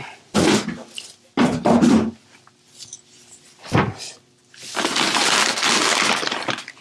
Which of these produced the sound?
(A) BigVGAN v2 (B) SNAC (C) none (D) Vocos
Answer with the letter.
C